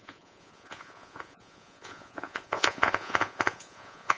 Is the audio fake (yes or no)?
yes